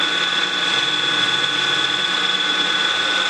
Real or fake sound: fake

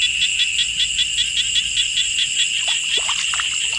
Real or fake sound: real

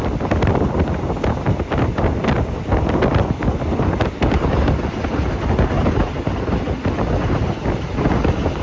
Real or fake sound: real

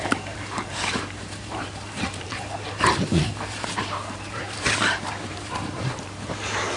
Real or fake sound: fake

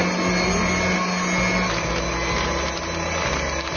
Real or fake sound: real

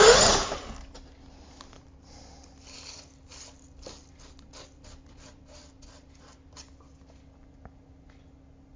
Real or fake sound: real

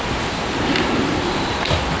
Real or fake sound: real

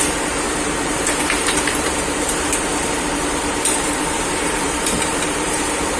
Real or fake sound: fake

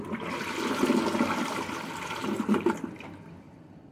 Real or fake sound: real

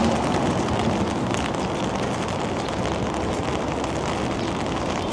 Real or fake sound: real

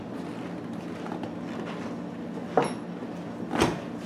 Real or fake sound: real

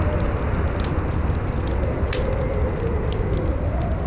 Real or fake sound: real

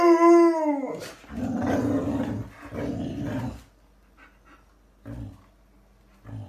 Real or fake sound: real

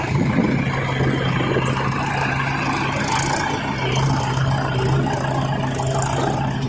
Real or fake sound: real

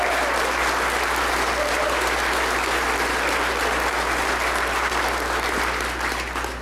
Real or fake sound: fake